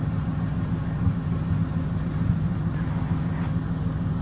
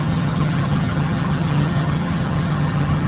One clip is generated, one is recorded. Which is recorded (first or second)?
first